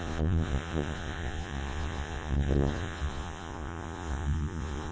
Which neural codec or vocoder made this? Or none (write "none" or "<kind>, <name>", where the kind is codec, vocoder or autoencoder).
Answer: vocoder, Vocos